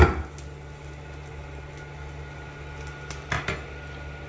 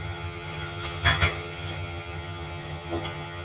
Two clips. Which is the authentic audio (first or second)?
first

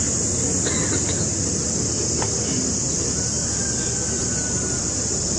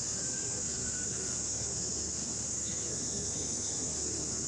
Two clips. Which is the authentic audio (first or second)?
first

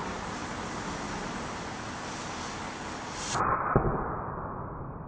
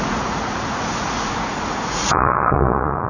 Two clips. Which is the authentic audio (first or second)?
first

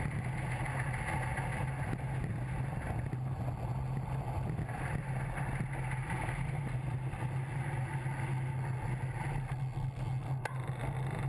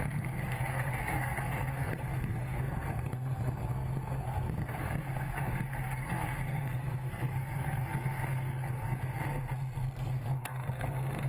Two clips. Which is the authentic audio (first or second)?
first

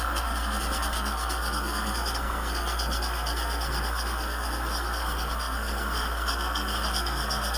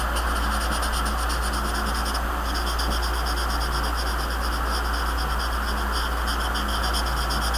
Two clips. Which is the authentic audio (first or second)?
second